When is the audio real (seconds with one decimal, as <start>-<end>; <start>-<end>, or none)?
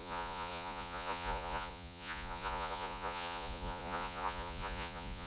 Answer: none